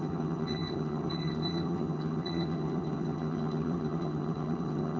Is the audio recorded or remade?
remade